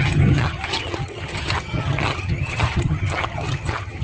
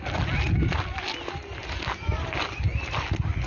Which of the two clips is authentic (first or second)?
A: second